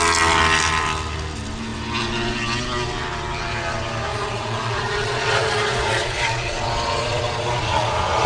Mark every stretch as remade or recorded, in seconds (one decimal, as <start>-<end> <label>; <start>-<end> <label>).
0.0-4.1 recorded; 4.1-8.3 remade